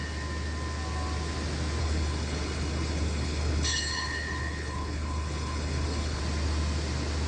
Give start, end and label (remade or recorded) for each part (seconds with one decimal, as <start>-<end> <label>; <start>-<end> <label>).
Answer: 0.0-1.8 recorded; 1.8-6.2 remade; 6.2-7.3 recorded